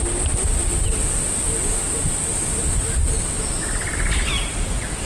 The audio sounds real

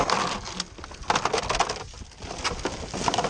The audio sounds real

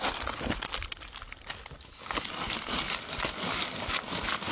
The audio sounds real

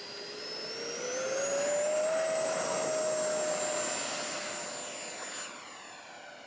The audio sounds real